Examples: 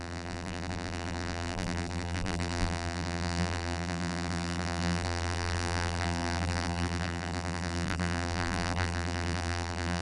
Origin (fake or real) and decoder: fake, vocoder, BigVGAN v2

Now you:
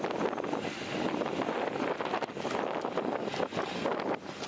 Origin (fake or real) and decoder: real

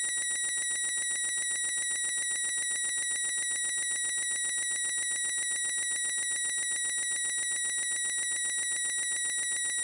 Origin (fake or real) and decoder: real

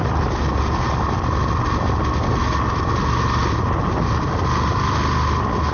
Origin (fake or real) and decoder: real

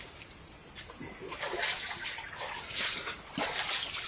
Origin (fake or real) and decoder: real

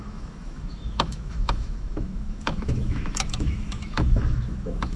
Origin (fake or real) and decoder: fake, autoencoder, DAC-VAE